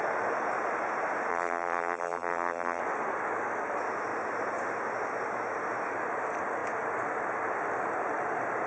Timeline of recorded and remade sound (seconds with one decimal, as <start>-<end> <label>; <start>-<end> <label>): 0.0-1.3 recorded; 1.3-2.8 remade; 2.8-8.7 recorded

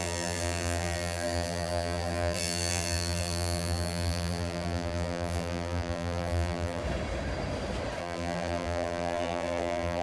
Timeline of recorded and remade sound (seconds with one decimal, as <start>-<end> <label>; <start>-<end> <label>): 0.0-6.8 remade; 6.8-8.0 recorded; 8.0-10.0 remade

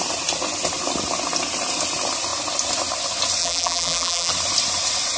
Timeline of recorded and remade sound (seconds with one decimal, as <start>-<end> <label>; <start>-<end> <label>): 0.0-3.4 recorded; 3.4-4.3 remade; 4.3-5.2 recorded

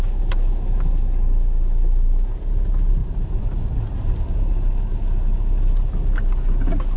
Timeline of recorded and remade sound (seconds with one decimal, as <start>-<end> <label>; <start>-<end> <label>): 0.0-3.0 recorded; 3.0-3.8 remade; 3.8-7.0 recorded